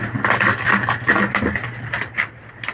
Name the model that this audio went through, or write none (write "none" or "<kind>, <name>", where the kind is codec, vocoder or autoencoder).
none